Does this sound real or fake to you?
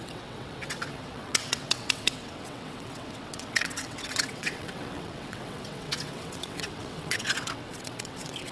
fake